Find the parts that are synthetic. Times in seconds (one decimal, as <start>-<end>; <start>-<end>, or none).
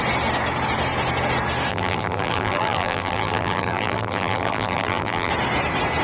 1.7-5.3